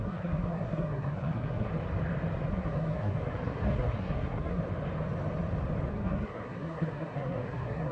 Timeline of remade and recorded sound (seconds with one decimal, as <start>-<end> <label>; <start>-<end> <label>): 0.0-1.7 remade; 1.7-2.5 recorded; 2.5-4.6 remade; 4.6-5.9 recorded; 5.9-7.9 remade